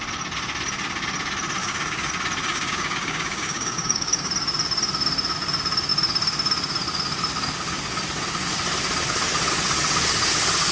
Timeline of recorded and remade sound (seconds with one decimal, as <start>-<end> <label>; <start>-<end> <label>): 0.0-1.6 recorded; 1.6-2.1 remade; 2.1-2.5 recorded; 2.5-4.3 remade; 4.3-10.7 recorded